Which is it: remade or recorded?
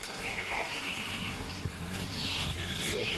remade